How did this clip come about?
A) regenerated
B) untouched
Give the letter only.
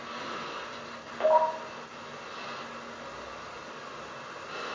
B